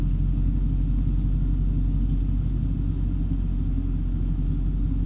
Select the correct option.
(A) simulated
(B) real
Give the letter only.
B